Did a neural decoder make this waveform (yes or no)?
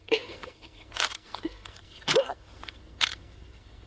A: yes